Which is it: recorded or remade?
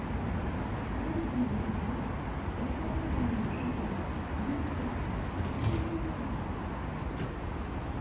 recorded